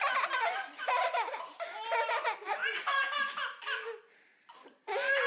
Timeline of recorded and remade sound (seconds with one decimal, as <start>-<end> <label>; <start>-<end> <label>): 0.0-5.3 recorded